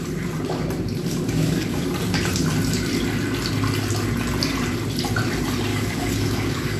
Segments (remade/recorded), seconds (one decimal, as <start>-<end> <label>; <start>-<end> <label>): 0.0-1.0 recorded; 1.0-1.8 remade; 1.8-5.7 recorded; 5.7-6.8 remade